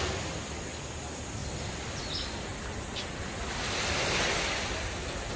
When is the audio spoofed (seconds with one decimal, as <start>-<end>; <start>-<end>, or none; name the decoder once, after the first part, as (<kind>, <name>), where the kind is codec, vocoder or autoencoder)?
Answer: none

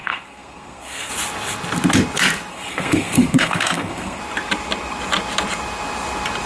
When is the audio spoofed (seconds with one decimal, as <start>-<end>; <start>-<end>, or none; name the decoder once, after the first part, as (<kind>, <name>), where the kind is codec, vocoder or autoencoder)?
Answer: 0.0-1.1 (codec, SNAC); 2.5-4.2

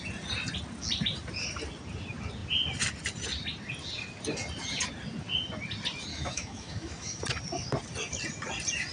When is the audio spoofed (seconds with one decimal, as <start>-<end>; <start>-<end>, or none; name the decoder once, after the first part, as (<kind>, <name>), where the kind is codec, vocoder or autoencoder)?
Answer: 6.1-7.2 (autoencoder, DAC-VAE)